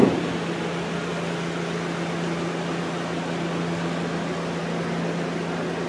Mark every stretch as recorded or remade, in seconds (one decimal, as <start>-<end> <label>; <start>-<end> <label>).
0.0-5.9 recorded